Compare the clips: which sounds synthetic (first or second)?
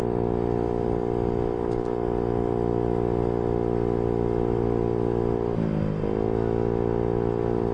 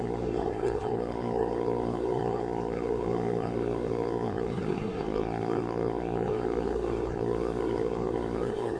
second